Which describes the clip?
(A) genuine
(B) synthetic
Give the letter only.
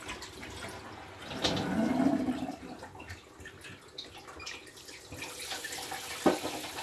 A